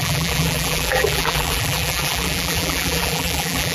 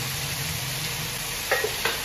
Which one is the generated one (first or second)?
first